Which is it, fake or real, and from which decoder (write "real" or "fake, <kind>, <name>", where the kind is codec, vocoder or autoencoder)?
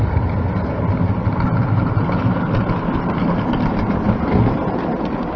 real